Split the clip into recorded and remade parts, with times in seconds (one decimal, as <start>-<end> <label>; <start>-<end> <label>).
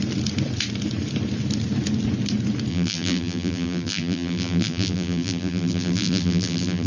0.0-2.7 recorded; 2.7-6.9 remade